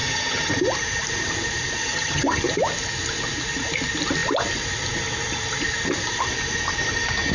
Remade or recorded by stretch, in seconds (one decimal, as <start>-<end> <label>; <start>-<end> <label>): 0.0-0.5 remade; 0.5-1.8 recorded; 1.8-2.4 remade; 2.4-7.3 recorded